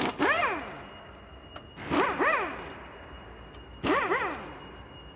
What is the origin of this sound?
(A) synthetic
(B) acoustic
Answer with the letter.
B